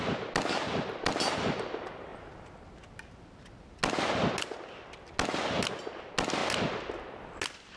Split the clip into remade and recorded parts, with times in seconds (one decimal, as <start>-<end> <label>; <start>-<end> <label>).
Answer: 0.0-7.8 recorded